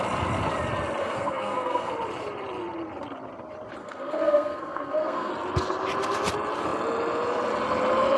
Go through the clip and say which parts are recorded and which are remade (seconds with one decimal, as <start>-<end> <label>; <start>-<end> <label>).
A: 0.0-1.0 recorded; 1.0-1.9 remade; 1.9-3.8 recorded; 3.8-5.3 remade; 5.3-8.2 recorded